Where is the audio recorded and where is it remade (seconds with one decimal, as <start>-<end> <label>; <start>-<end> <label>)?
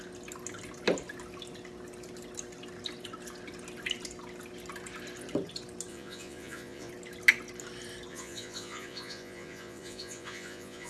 0.0-5.9 recorded; 5.9-6.9 remade; 6.9-8.1 recorded; 8.1-10.9 remade